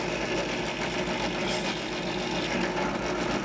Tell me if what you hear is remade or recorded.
recorded